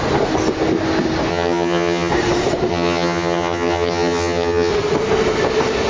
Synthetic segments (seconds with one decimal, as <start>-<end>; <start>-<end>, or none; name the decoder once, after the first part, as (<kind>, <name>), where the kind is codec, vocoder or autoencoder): 1.3-2.1 (vocoder, HiFi-GAN); 2.7-4.7